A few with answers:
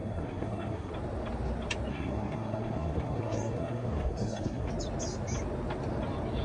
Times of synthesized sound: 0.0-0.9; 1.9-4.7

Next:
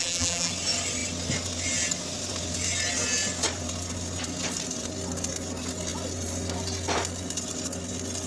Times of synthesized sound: 0.0-0.5

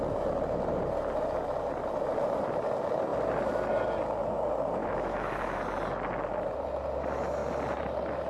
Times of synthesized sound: 4.8-5.6

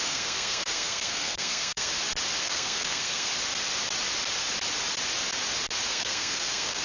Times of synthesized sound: 0.0-1.9; 2.4-3.3; 5.9-6.8

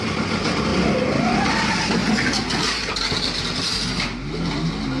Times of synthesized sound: 0.0-0.7; 1.2-2.0

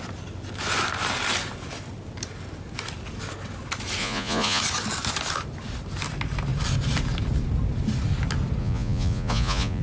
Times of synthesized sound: 4.0-4.6; 8.6-9.8

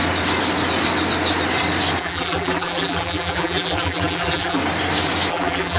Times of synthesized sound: 2.0-4.6; 5.3-5.8

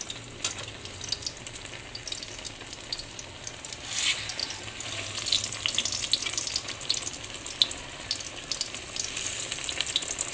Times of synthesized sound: none